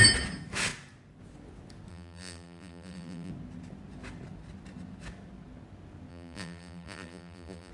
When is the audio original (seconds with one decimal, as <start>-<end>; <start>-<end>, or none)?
0.0-1.9; 3.3-6.1